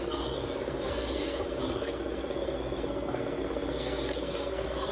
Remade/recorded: remade